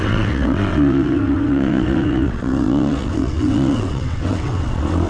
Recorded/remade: remade